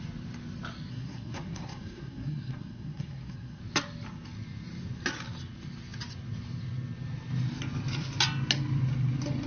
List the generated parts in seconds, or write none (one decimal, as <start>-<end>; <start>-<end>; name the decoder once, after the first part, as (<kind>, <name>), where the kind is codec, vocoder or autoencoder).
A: 0.9-3.6 (codec, SNAC)